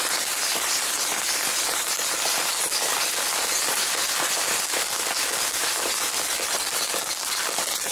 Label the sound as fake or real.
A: real